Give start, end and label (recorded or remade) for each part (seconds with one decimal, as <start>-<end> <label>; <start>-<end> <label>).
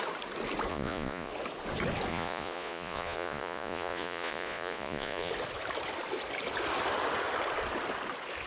0.0-0.7 recorded; 0.7-1.3 remade; 1.3-2.1 recorded; 2.1-5.3 remade; 5.3-8.5 recorded